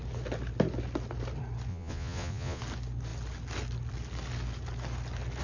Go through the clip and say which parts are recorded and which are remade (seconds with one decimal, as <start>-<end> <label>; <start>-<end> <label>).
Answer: 0.0-1.7 recorded; 1.7-2.6 remade; 2.6-5.4 recorded